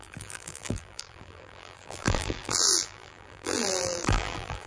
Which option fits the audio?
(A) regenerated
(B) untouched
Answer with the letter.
A